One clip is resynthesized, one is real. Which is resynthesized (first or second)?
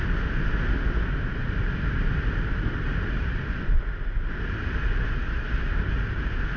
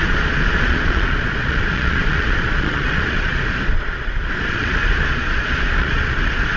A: second